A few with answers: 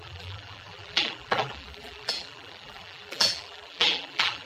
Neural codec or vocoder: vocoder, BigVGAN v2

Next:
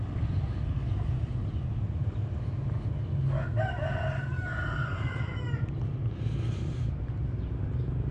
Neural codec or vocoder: none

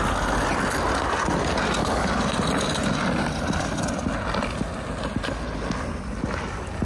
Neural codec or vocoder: none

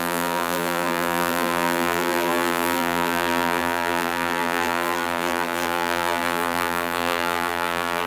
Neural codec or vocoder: vocoder, BigVGAN v2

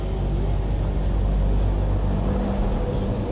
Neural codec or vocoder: none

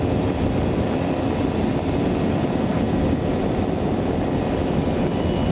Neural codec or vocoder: vocoder, BigVGAN v2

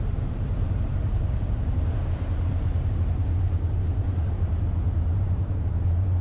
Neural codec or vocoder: vocoder, BigVGAN v2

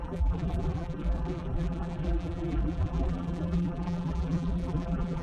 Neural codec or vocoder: vocoder, BigVGAN v2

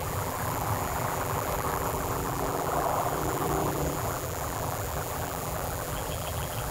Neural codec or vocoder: vocoder, BigVGAN v2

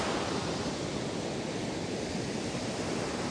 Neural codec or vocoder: vocoder, BigVGAN v2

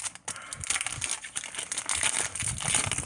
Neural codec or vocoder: none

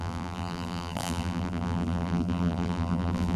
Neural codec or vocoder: vocoder, BigVGAN v2